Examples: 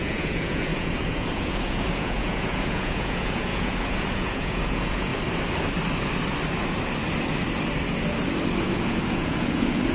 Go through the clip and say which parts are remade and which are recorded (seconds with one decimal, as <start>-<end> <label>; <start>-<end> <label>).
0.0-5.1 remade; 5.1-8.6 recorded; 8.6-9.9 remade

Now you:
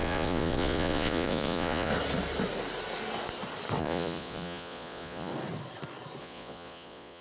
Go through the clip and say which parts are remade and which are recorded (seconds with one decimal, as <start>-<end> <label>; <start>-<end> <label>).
0.0-1.9 remade; 1.9-3.8 recorded; 3.8-5.3 remade; 5.3-6.2 recorded; 6.2-7.2 remade

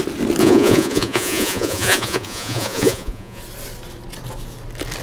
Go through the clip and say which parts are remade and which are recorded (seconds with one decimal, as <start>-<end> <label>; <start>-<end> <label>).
0.0-0.4 recorded; 0.4-3.4 remade; 3.4-5.0 recorded

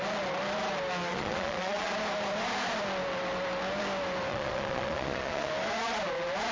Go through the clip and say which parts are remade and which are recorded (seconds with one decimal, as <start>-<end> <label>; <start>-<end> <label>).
0.0-1.1 recorded; 1.1-1.9 remade; 1.9-4.3 recorded; 4.3-5.5 remade; 5.5-6.5 recorded